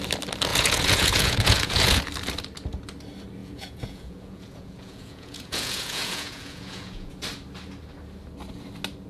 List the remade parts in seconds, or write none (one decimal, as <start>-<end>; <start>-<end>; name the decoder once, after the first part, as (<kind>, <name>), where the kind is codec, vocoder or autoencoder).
0.5-2.0 (vocoder, Vocos); 3.4-7.1